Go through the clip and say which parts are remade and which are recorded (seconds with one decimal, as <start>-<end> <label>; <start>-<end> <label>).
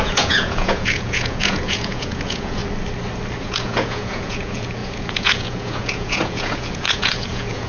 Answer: 0.0-2.6 remade; 2.6-3.4 recorded; 3.4-7.7 remade